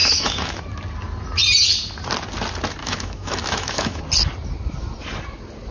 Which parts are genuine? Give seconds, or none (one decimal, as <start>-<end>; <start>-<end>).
0.6-2.8; 4.0-5.7